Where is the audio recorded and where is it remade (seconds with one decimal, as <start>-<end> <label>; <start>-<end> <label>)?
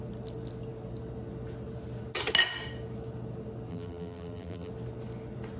0.0-3.7 recorded; 3.7-4.7 remade; 4.7-5.6 recorded